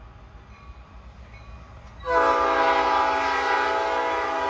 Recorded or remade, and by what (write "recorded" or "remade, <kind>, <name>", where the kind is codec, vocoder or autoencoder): recorded